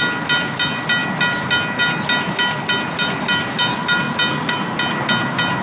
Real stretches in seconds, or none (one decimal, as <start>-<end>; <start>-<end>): 0.0-5.6